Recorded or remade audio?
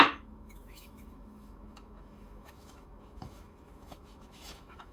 remade